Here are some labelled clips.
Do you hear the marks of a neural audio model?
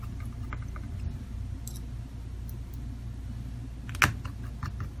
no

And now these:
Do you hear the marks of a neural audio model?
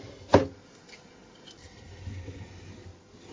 no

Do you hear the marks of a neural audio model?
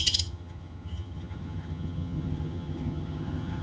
yes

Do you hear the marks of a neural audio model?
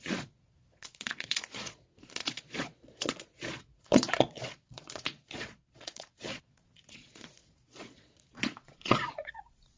yes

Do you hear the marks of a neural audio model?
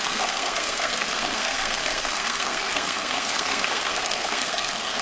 yes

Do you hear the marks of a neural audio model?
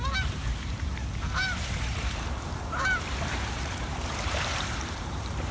yes